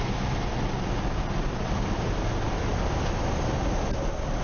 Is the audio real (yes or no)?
yes